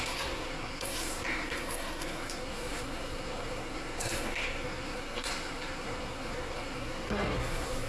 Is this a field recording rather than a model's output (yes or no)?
no